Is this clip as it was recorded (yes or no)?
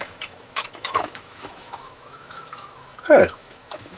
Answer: no